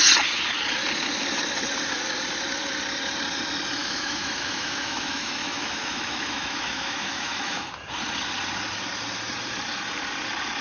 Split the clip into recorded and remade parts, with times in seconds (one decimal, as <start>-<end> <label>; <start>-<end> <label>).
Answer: 0.0-3.8 recorded; 3.8-7.7 remade; 7.7-10.6 recorded